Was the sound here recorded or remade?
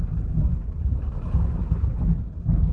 recorded